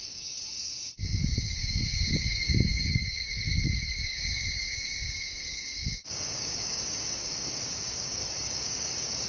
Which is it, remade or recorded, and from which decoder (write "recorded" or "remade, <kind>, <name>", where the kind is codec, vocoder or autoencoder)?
remade, codec, DAC